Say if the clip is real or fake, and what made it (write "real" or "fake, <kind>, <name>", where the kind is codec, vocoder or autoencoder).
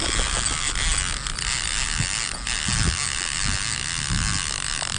real